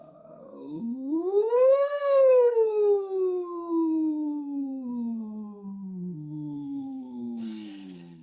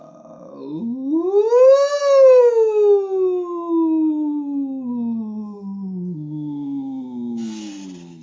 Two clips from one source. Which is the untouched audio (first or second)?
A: second